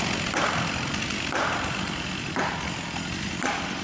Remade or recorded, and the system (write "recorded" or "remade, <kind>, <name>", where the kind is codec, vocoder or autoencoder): remade, vocoder, BigVGAN v2